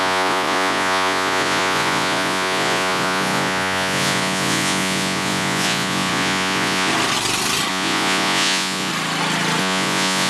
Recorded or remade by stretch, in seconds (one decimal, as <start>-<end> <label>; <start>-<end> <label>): 0.0-6.9 remade; 6.9-7.7 recorded; 7.7-8.9 remade; 8.9-9.6 recorded; 9.6-10.3 remade